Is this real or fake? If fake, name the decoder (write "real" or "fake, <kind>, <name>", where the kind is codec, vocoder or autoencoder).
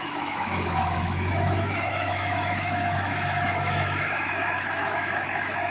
fake, autoencoder, DAC-VAE